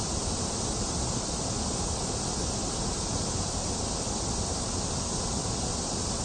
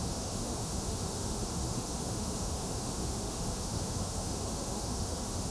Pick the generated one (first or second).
second